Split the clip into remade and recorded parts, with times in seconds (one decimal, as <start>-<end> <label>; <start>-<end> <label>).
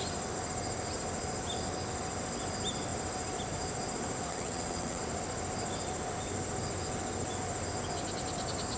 0.0-4.3 recorded; 4.3-5.0 remade; 5.0-8.8 recorded